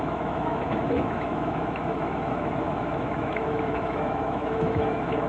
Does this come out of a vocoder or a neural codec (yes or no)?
yes